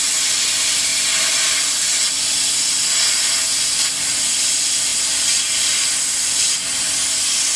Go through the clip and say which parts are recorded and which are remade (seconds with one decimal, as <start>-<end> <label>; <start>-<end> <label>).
0.0-7.6 recorded